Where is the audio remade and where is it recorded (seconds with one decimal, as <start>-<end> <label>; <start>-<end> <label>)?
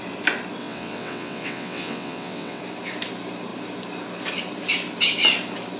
0.0-0.6 recorded; 0.6-2.6 remade; 2.6-5.8 recorded